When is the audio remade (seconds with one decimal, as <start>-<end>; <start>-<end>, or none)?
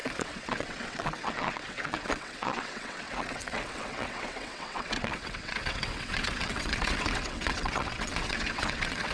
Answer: 0.0-9.1